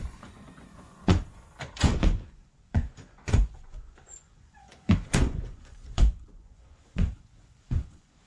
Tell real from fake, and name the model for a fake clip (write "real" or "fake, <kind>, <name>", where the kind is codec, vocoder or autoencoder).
fake, vocoder, Vocos